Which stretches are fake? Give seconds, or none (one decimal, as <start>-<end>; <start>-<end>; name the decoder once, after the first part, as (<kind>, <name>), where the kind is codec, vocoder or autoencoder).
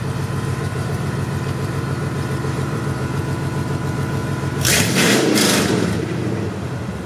0.5-3.2 (vocoder, BigVGAN v2); 4.2-5.9